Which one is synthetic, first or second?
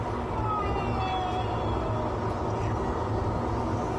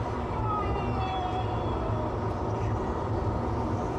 second